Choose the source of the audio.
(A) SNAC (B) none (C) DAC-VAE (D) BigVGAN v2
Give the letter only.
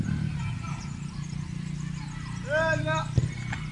B